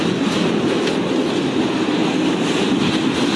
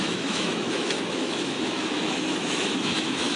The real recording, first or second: first